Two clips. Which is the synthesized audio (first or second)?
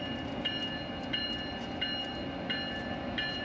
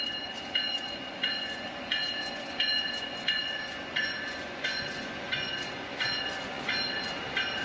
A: second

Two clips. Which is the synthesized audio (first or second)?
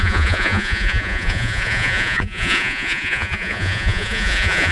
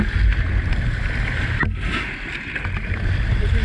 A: first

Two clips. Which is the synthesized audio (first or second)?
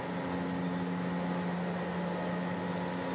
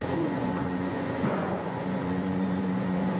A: second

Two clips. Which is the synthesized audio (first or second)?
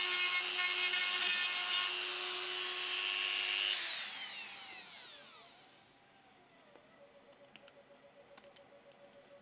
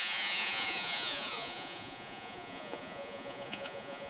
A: second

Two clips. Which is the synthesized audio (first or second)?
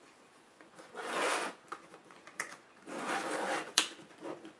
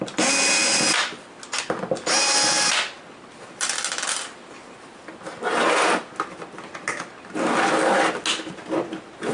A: first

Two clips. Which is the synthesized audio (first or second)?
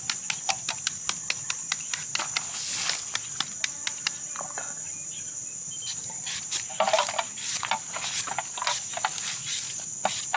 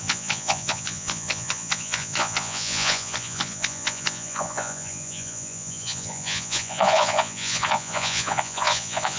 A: second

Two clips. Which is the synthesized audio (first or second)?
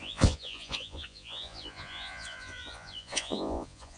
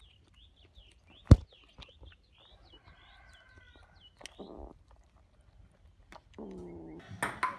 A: first